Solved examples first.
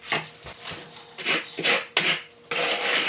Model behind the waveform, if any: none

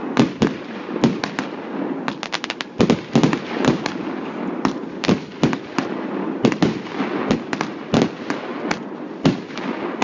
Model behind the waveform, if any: none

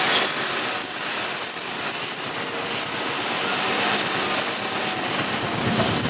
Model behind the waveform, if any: none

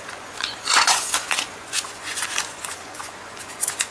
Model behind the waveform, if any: vocoder, Vocos